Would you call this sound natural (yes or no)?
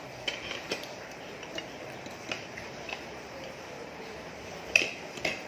no